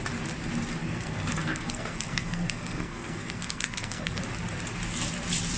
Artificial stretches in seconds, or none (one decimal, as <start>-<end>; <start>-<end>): 0.8-4.2